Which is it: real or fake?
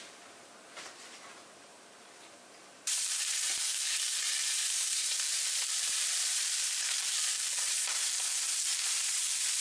fake